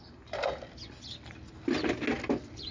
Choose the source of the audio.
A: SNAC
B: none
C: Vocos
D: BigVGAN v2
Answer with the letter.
B